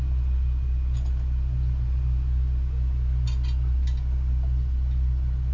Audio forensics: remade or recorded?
recorded